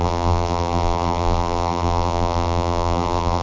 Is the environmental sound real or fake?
fake